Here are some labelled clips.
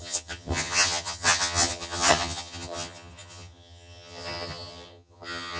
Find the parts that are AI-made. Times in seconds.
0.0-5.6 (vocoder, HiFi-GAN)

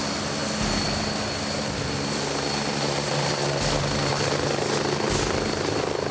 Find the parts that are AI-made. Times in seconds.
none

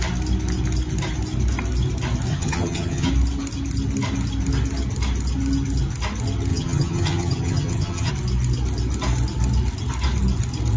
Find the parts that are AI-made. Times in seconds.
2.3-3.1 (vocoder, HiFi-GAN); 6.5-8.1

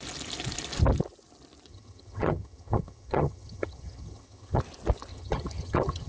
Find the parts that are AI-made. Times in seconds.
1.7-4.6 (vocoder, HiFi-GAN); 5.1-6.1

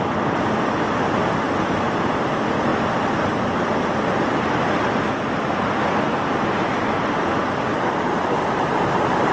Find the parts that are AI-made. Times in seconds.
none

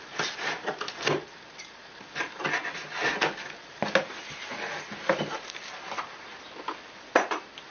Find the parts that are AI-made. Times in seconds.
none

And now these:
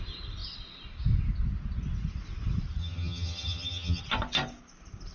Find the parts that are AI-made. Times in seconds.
2.8-4.0 (vocoder, HiFi-GAN)

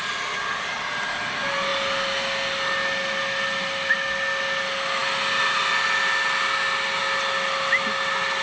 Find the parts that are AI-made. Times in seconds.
none